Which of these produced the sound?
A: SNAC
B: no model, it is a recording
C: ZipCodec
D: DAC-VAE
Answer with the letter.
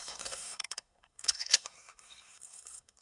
A